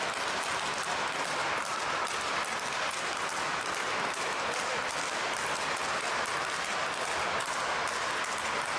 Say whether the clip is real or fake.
real